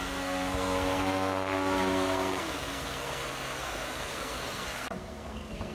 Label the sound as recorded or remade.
remade